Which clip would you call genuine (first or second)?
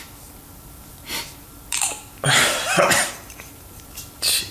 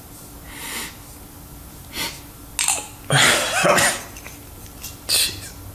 second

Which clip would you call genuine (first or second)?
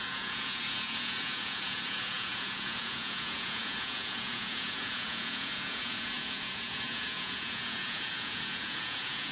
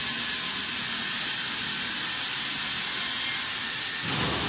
second